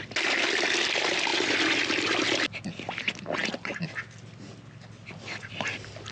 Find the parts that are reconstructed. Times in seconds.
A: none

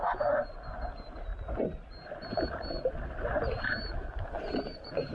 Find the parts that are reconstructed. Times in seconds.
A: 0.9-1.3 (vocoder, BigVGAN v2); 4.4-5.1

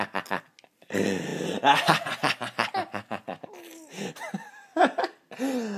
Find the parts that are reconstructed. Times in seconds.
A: none

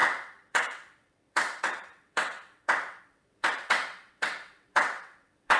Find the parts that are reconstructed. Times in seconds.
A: 0.0-5.6 (vocoder, WaveNeXt)

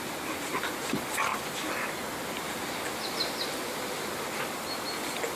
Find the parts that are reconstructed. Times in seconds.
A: none

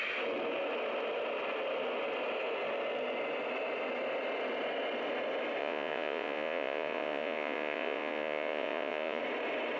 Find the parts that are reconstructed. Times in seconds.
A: 5.6-9.2 (vocoder, Vocos)

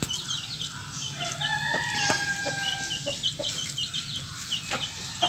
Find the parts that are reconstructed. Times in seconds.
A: none

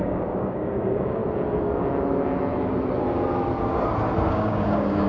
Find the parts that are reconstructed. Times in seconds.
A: 0.0-1.2 (codec, DAC); 4.3-5.1